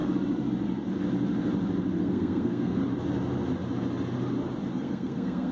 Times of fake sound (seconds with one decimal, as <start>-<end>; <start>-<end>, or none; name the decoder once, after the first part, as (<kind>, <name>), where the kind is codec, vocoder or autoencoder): 2.0-2.8 (codec, SNAC); 4.7-5.5